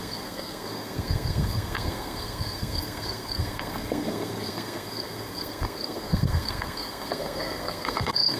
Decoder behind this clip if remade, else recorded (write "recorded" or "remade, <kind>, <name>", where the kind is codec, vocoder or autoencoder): remade, codec, SNAC